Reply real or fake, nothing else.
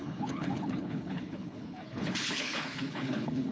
fake